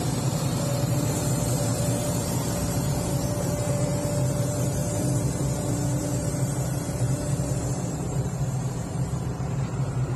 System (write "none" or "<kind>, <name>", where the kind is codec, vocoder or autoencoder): vocoder, BigVGAN v2